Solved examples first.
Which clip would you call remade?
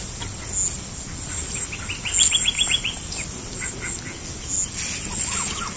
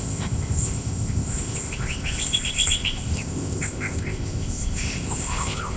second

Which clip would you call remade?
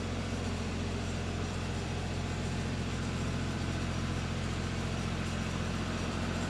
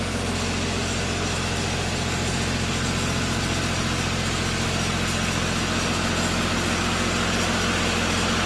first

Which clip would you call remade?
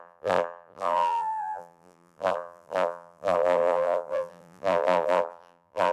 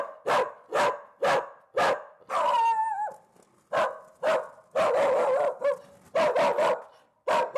first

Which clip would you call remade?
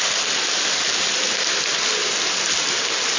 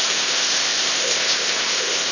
second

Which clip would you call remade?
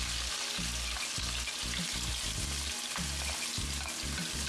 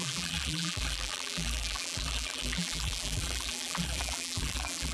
second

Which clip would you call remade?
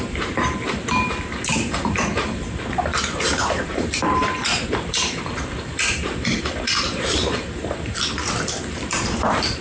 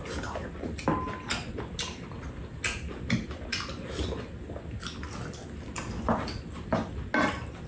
first